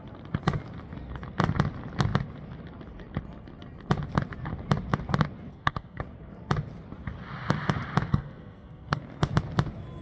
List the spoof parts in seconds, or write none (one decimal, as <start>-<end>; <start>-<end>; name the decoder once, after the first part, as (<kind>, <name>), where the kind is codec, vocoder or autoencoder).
5.5-6.0 (codec, SNAC); 8.1-9.0